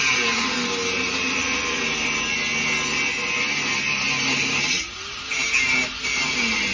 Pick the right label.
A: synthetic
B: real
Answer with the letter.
B